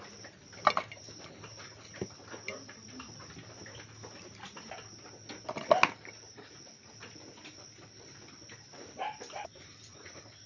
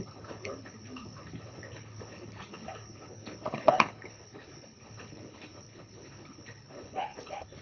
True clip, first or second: first